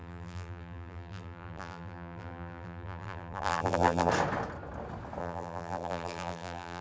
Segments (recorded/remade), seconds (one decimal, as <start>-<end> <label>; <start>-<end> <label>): 0.0-4.1 remade; 4.1-5.2 recorded; 5.2-6.8 remade